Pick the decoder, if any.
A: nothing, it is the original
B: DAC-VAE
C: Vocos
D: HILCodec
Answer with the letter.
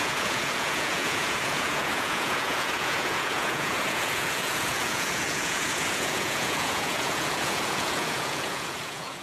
C